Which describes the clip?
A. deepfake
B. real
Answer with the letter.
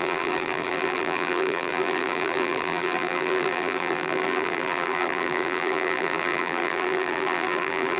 A